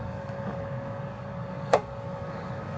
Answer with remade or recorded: remade